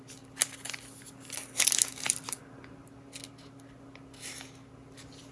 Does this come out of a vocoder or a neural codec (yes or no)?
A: no